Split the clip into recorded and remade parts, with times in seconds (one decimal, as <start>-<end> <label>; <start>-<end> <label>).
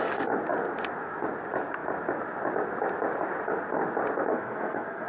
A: 0.0-4.3 recorded; 4.3-5.1 remade